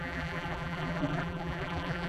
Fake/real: fake